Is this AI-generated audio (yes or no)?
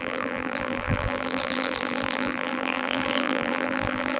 yes